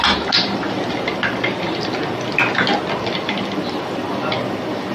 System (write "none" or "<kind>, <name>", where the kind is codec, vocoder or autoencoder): none